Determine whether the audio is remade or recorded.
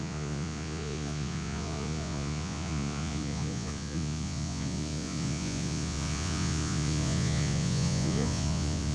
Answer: remade